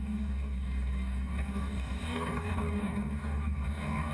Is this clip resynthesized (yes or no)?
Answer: yes